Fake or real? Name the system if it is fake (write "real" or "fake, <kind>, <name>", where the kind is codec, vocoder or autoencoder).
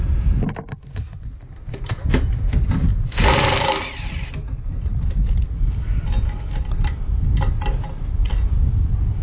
real